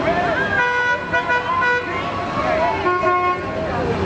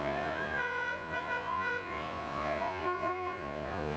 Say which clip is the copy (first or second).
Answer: second